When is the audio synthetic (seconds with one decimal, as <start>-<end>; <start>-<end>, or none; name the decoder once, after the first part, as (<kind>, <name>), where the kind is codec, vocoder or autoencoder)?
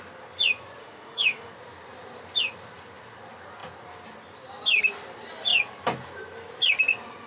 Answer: 0.8-1.5 (autoencoder, DAC-VAE)